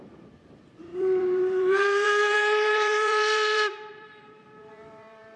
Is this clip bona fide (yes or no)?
no